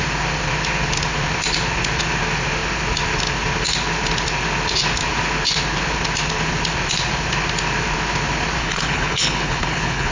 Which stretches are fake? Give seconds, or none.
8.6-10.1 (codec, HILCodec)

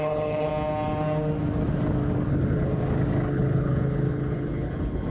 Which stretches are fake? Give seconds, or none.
0.0-0.5 (codec, HILCodec); 2.3-2.7; 3.3-5.1

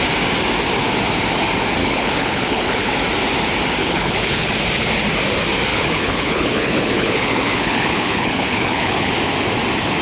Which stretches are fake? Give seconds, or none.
1.8-2.9 (codec, HILCodec); 3.8-4.5; 5.7-9.1